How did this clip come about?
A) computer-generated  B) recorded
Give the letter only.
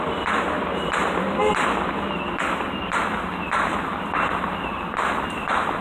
B